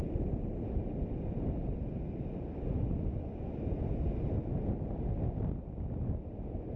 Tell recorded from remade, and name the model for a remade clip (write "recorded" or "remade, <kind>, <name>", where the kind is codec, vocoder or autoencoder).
recorded